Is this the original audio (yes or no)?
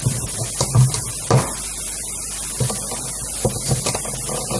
yes